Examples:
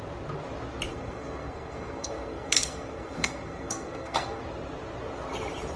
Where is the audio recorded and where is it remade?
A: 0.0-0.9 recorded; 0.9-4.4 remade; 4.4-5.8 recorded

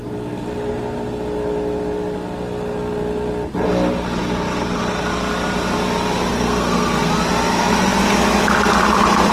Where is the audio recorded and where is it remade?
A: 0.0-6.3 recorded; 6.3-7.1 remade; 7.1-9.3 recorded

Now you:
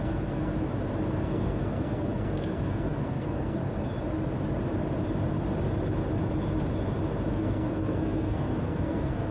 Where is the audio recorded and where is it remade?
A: 0.0-0.5 remade; 0.5-1.1 recorded; 1.1-3.6 remade; 3.6-7.3 recorded; 7.3-9.3 remade

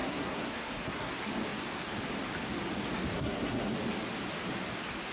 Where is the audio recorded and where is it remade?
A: 0.0-1.1 remade; 1.1-3.1 recorded; 3.1-3.7 remade; 3.7-5.1 recorded

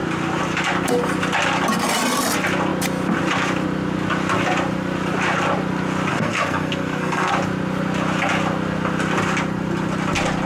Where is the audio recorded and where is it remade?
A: 0.0-6.1 recorded; 6.1-7.3 remade; 7.3-10.5 recorded